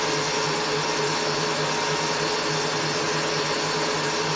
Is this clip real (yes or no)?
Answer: yes